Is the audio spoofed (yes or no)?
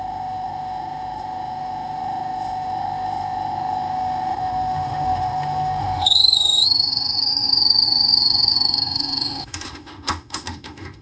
yes